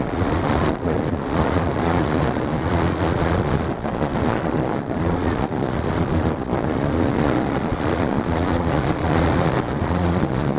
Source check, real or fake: fake